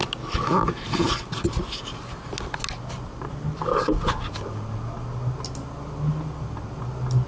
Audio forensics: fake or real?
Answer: real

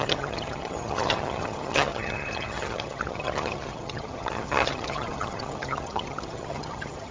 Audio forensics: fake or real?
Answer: fake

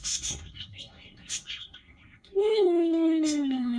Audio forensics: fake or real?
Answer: fake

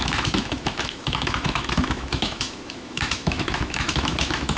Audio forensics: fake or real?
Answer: fake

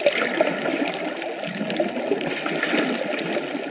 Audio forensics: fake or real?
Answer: real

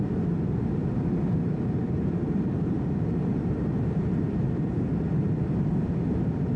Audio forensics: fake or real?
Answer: fake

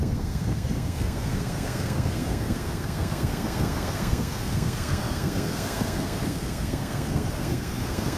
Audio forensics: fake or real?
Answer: fake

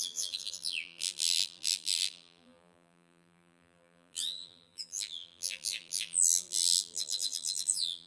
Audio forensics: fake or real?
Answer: fake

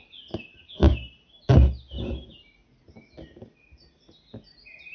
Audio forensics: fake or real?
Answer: real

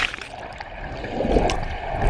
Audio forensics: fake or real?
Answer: real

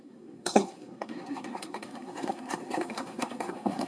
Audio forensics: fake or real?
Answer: fake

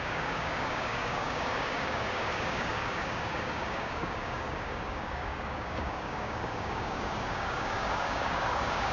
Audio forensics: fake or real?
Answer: fake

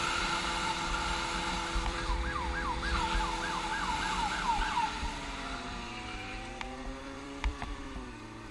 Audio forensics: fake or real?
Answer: fake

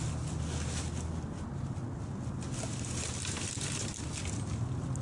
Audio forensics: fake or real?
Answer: real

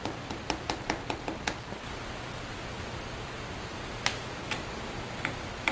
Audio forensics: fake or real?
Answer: real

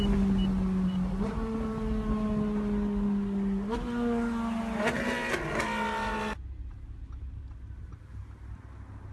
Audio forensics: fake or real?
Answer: real